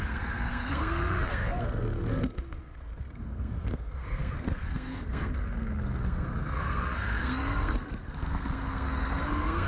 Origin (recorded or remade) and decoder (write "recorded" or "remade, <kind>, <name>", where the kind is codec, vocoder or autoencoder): remade, codec, SNAC